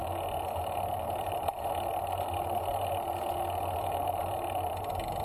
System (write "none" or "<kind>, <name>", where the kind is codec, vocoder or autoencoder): none